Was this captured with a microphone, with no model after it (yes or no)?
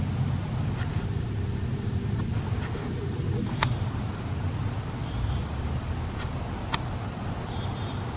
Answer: yes